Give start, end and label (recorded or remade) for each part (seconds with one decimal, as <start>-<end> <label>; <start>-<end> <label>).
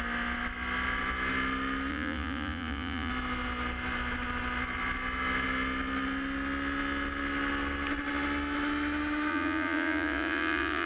0.0-1.9 recorded; 1.9-3.1 remade; 3.1-9.3 recorded; 9.3-10.9 remade